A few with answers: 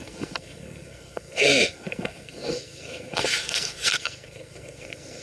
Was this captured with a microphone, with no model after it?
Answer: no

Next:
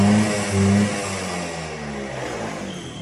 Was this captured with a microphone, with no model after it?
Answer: yes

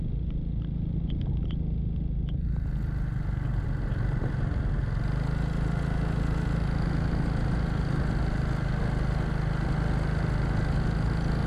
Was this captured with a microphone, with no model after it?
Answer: yes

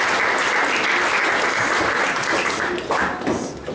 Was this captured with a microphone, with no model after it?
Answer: yes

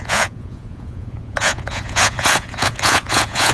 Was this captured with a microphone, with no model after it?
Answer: no